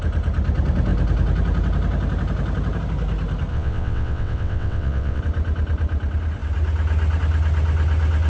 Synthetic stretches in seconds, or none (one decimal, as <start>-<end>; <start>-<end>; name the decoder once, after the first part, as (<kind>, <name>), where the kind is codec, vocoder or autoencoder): 3.5-5.2 (vocoder, WaveNeXt)